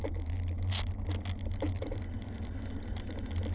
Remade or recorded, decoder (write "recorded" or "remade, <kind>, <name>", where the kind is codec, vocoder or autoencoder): recorded